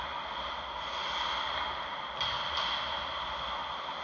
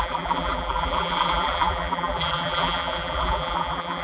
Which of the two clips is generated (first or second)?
second